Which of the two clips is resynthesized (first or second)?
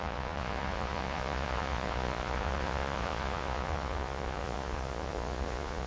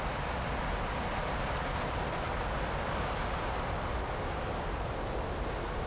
first